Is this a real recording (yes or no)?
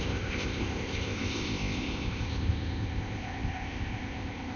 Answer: no